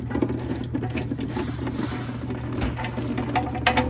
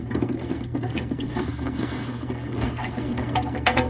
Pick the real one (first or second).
first